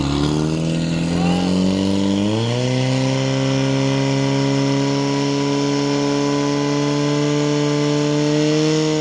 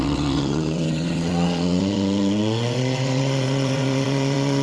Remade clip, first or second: second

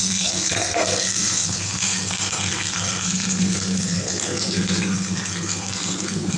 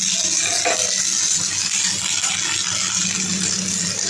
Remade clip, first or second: first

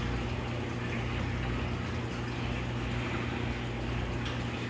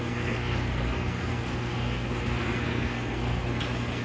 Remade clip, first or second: second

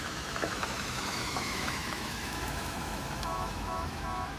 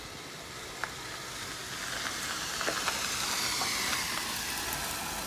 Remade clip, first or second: first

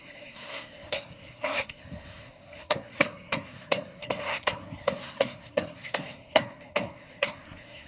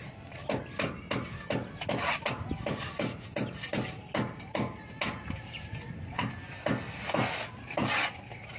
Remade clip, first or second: first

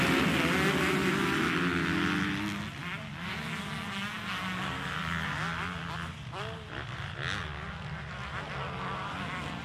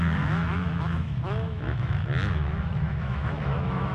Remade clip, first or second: second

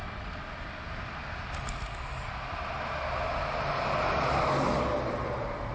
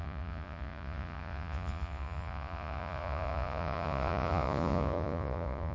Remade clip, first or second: second